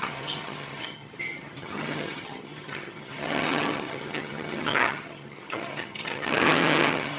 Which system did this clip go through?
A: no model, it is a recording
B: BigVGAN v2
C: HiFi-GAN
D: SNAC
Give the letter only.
C